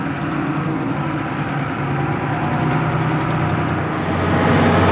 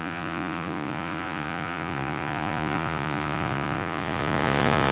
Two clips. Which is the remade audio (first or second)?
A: second